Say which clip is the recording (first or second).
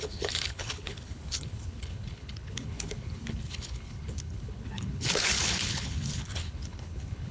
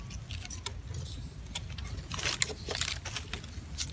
second